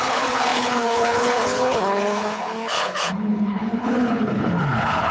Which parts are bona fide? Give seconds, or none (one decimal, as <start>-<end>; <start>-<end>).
none